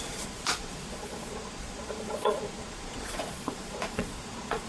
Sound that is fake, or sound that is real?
fake